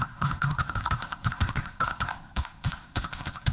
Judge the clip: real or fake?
fake